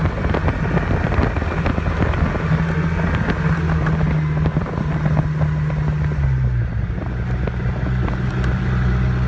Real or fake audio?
real